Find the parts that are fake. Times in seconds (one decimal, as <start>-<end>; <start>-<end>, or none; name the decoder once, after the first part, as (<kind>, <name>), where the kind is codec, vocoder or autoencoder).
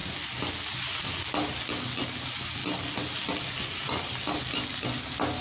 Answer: none